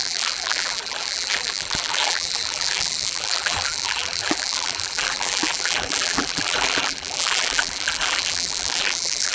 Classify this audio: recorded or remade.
remade